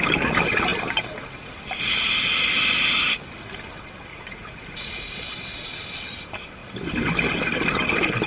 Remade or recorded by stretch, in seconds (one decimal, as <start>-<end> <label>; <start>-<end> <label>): 0.0-4.1 recorded; 4.1-5.0 remade; 5.0-8.3 recorded